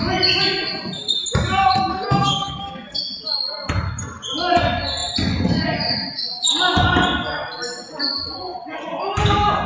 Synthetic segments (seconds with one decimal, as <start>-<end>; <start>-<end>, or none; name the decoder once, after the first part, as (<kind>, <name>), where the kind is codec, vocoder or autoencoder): 1.9-3.0 (codec, SNAC)